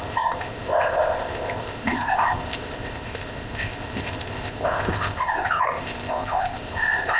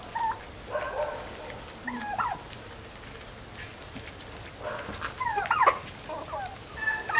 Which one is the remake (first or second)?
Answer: first